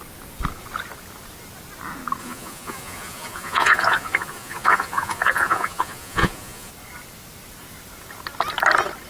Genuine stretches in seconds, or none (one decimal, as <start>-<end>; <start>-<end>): 0.0-2.2; 6.7-9.1